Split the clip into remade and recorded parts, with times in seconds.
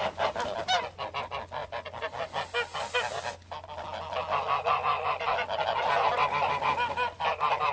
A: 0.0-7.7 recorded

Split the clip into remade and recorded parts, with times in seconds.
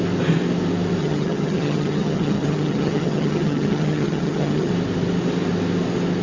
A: 0.0-1.0 recorded; 1.0-4.7 remade; 4.7-6.2 recorded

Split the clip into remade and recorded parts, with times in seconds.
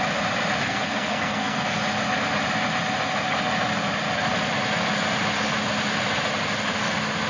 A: 0.0-0.6 recorded; 0.6-1.8 remade; 1.8-7.3 recorded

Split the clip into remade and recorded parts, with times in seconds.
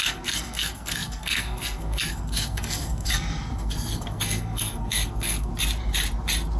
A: 0.0-5.5 remade; 5.5-6.6 recorded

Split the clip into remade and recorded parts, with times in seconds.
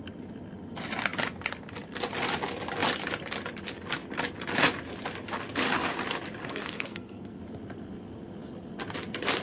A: 0.0-6.4 recorded; 6.4-7.4 remade; 7.4-9.4 recorded